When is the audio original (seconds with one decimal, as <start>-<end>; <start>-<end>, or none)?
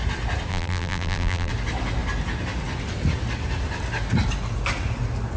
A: 0.0-0.5; 1.5-5.4